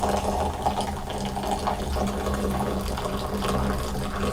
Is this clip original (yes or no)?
yes